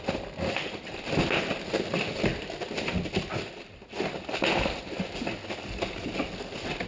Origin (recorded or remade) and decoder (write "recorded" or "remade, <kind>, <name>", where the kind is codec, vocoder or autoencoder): recorded